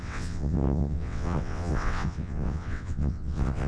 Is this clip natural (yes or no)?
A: no